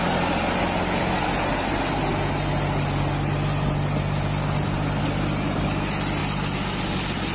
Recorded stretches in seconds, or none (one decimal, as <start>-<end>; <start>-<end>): 0.0-7.3